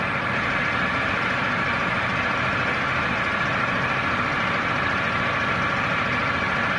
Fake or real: real